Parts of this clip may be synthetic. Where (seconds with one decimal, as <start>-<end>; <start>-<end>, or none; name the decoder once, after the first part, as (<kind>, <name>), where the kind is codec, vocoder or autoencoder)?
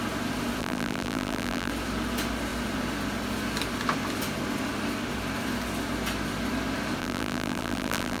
0.6-1.7 (vocoder, BigVGAN v2); 7.0-8.2